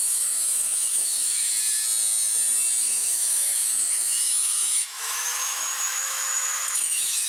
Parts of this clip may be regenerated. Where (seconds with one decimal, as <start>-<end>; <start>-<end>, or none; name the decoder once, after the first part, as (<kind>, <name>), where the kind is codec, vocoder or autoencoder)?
0.0-1.5 (autoencoder, DAC-VAE); 2.8-7.3